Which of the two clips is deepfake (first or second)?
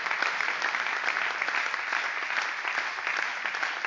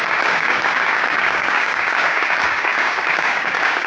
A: second